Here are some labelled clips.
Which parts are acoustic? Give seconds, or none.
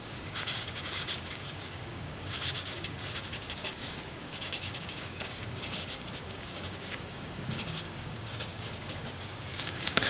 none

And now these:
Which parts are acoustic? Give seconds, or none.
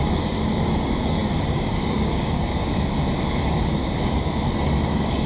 none